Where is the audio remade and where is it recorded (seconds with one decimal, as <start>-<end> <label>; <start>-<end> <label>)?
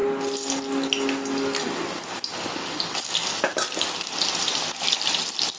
0.0-5.6 recorded